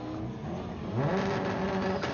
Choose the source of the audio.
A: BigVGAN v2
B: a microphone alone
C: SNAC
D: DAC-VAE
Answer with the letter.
B